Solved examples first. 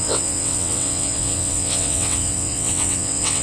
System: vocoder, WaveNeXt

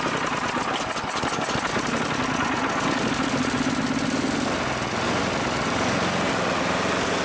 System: none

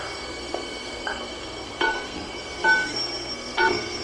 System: codec, SNAC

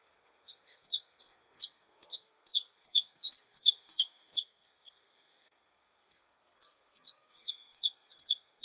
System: codec, SNAC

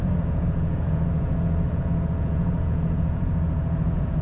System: vocoder, Vocos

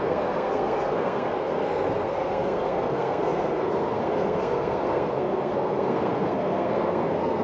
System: codec, SNAC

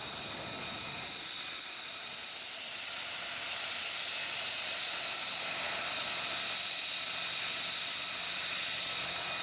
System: none